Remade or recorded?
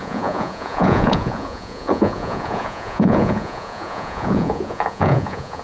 remade